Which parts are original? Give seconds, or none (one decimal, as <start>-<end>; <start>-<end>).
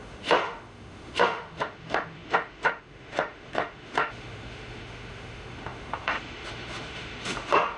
none